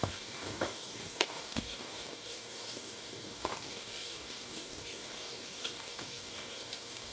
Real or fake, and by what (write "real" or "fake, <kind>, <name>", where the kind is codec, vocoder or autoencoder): fake, codec, DAC